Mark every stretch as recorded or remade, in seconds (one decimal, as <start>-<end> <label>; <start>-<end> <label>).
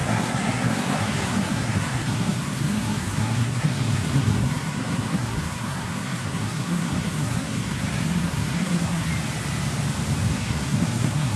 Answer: 0.0-9.1 remade; 9.1-10.3 recorded; 10.3-11.4 remade